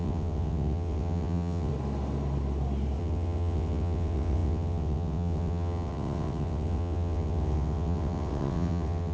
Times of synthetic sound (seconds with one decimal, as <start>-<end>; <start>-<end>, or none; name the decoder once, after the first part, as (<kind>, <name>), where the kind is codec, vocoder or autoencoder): 0.0-1.7 (vocoder, WaveNeXt); 3.0-9.1

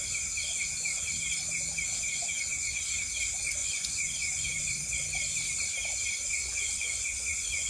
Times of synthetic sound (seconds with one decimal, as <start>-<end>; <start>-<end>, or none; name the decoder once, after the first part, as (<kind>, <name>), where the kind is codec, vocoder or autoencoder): 2.2-2.8 (vocoder, Vocos); 3.6-5.0; 6.4-7.7

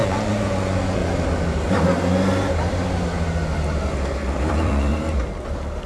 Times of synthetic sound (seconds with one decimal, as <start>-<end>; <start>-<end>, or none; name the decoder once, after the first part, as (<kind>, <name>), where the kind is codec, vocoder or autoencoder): 0.0-1.0 (vocoder, Vocos); 4.5-4.9